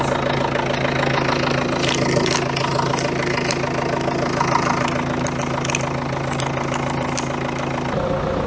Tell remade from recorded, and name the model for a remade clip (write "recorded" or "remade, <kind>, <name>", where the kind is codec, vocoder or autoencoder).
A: recorded